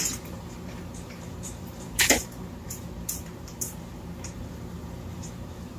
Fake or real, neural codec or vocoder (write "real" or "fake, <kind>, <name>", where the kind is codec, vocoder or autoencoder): fake, vocoder, BigVGAN v2